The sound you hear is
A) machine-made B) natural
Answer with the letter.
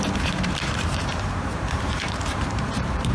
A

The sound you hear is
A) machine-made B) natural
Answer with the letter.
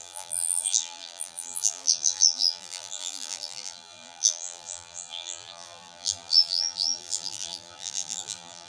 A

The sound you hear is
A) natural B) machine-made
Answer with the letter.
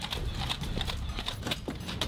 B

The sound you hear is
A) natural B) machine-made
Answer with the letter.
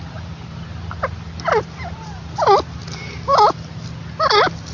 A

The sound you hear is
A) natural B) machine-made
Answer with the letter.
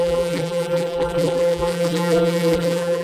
B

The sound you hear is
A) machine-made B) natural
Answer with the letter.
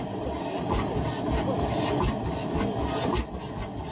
B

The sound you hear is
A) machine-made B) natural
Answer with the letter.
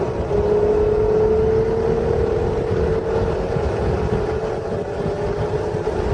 B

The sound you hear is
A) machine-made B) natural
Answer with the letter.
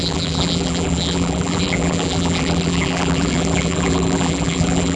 A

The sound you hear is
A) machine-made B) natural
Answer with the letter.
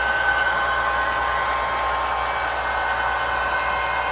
B